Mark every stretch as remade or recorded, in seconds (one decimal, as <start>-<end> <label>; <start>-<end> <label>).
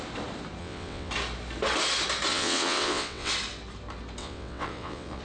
0.0-0.6 recorded; 0.6-1.1 remade; 1.1-2.3 recorded; 2.3-3.3 remade; 3.3-4.2 recorded; 4.2-5.2 remade